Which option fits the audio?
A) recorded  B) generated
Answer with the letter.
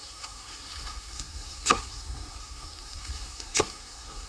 B